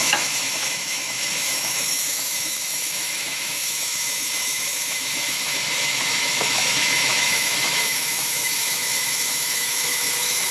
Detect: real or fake fake